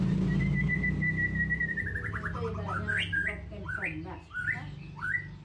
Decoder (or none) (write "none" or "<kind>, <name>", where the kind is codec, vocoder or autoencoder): none